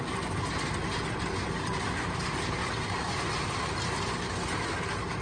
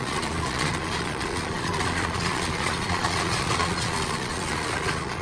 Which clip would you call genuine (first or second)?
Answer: first